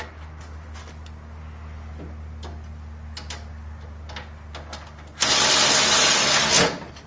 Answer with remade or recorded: recorded